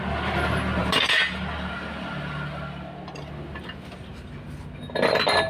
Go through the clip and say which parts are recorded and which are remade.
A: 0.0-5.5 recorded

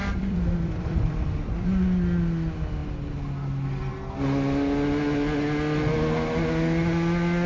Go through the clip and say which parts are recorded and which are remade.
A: 0.0-1.4 remade; 1.4-7.5 recorded

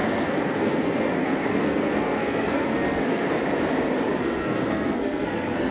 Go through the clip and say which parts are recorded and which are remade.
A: 0.0-3.4 remade; 3.4-4.2 recorded; 4.2-5.7 remade

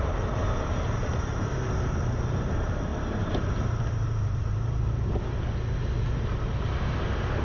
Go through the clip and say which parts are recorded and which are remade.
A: 0.0-7.4 remade

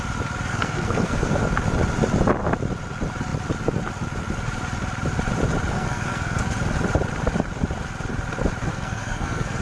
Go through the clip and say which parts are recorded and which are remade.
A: 0.0-0.5 recorded; 0.5-1.4 remade; 1.4-5.7 recorded; 5.7-6.4 remade; 6.4-8.7 recorded; 8.7-9.6 remade

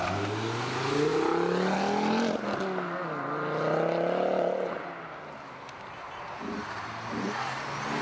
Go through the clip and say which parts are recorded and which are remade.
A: 0.0-8.0 recorded

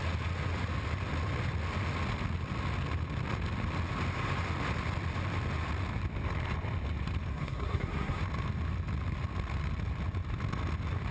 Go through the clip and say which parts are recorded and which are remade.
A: 0.0-7.3 recorded; 7.3-8.2 remade; 8.2-11.1 recorded

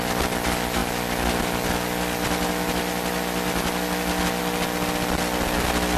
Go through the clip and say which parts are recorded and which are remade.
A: 0.0-6.0 recorded